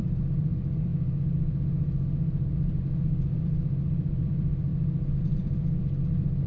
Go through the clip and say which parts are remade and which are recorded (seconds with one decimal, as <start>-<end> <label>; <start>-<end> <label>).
0.0-4.7 remade; 4.7-5.2 recorded; 5.2-6.5 remade